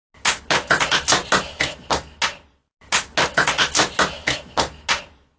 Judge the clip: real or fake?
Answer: real